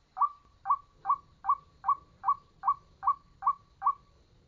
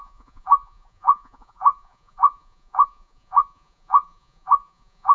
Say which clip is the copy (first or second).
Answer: second